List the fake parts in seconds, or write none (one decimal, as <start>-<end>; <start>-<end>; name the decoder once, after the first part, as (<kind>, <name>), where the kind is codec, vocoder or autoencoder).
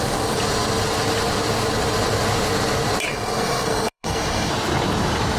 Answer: 3.1-4.5 (codec, SNAC)